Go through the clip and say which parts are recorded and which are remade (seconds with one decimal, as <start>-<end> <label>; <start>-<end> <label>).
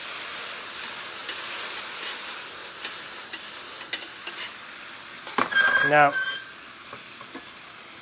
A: 0.0-8.0 recorded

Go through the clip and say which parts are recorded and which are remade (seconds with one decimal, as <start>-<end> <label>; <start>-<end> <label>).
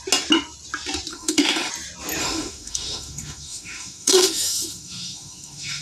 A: 0.0-1.1 recorded; 1.1-1.7 remade; 1.7-2.2 recorded; 2.2-5.8 remade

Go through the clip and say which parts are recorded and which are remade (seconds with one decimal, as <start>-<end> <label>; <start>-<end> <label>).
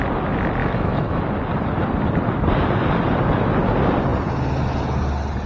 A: 0.0-0.6 recorded; 0.6-1.2 remade; 1.2-5.5 recorded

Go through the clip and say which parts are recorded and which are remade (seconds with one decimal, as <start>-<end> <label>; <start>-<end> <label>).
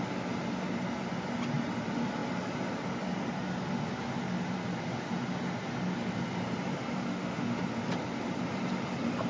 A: 0.0-7.1 recorded; 7.1-7.6 remade; 7.6-9.3 recorded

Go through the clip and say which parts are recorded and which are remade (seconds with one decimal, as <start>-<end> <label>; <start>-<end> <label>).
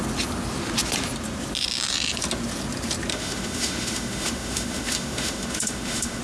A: 0.0-3.1 recorded; 3.1-6.2 remade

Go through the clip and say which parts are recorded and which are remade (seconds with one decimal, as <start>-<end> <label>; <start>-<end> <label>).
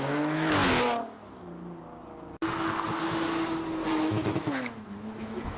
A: 0.0-0.6 remade; 0.6-4.0 recorded; 4.0-5.6 remade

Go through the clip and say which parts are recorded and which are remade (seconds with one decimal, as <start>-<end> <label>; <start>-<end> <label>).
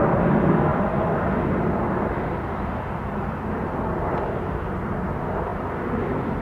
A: 0.0-6.4 recorded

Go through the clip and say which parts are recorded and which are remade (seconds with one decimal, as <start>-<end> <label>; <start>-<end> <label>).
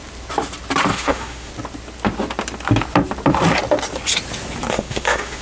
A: 0.0-0.9 recorded; 0.9-1.5 remade; 1.5-4.7 recorded; 4.7-5.4 remade